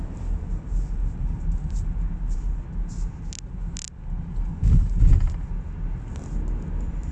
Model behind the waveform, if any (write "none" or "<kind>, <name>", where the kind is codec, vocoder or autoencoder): none